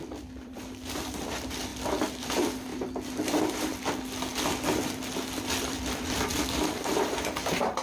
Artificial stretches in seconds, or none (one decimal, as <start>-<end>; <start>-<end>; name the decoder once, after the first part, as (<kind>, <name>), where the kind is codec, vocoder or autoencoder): 0.0-1.7 (vocoder, BigVGAN v2); 2.2-4.3; 5.6-7.8